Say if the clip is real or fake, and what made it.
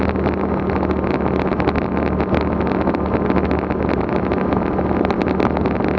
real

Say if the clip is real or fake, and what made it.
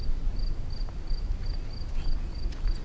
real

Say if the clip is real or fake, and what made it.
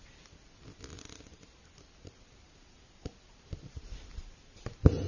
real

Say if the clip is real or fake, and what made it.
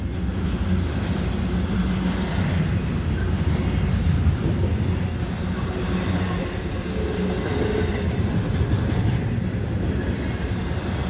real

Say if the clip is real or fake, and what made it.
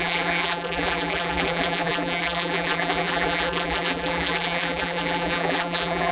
fake, vocoder, BigVGAN v2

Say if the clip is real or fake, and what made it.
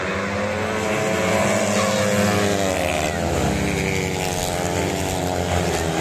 real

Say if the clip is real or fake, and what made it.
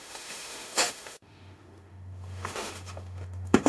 fake, autoencoder, DAC-VAE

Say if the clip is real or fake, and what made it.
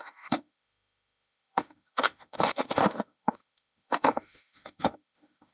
fake, autoencoder, DAC-VAE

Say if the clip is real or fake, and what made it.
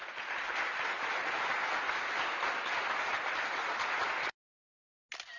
real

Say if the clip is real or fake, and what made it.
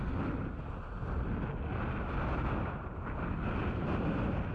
real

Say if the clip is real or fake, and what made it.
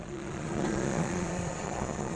fake, vocoder, Vocos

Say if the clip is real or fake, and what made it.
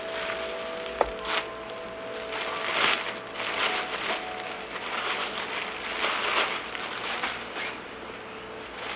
real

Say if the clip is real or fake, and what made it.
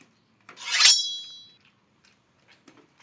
real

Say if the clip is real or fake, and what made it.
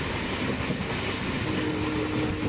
real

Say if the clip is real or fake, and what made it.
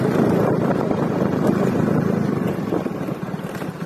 real